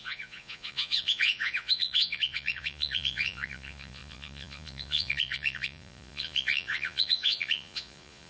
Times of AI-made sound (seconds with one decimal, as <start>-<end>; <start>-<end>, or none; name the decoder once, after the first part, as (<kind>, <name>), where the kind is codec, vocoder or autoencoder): 0.0-8.3 (vocoder, Vocos)